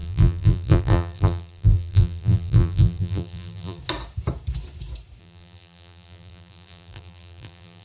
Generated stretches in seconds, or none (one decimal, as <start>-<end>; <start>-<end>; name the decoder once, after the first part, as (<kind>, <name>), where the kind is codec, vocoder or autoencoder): 0.0-3.8 (vocoder, BigVGAN v2); 5.2-7.8